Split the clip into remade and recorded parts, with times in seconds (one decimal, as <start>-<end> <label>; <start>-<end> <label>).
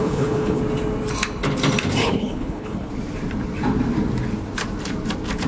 0.0-0.6 remade; 0.6-2.0 recorded; 2.0-2.9 remade; 2.9-5.5 recorded